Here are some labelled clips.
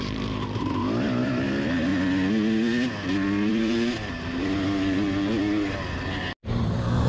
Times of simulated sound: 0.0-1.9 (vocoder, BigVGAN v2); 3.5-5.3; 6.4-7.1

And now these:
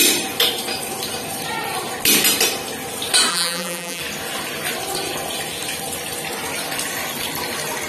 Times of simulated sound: 3.3-4.0 (vocoder, BigVGAN v2)

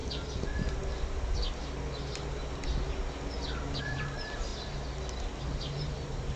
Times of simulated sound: 3.8-4.5 (vocoder, BigVGAN v2); 5.4-6.4

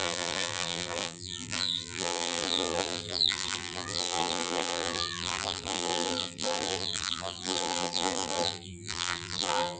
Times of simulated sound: 0.0-9.8 (vocoder, BigVGAN v2)